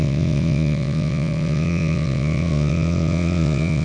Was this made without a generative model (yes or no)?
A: no